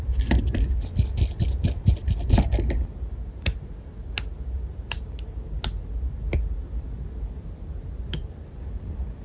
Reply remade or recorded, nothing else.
recorded